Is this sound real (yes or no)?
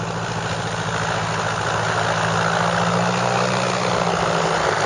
yes